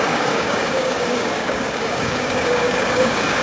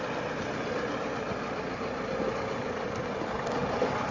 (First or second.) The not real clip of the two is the first